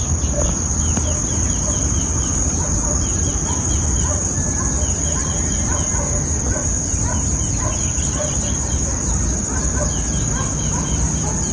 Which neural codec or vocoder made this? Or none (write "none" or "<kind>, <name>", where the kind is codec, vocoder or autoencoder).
none